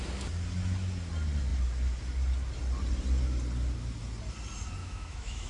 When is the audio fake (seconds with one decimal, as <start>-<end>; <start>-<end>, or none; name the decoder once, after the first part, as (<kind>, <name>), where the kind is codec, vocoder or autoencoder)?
4.8-5.5 (autoencoder, DAC-VAE)